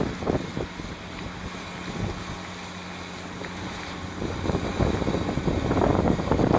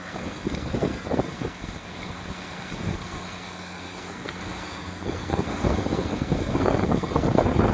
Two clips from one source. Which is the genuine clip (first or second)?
first